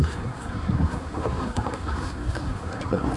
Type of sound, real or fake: fake